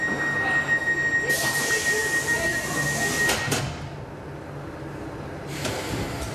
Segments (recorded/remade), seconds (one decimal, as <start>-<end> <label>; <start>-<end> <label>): 0.0-6.3 recorded